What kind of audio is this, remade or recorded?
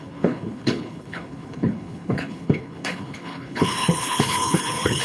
remade